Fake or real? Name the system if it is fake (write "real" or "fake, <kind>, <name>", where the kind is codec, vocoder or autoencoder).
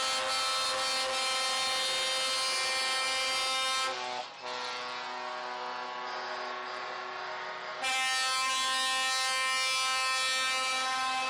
real